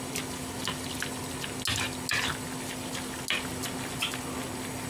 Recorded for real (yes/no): yes